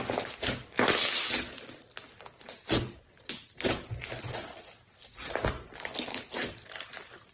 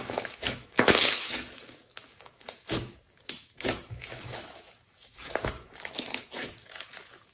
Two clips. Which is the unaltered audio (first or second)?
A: first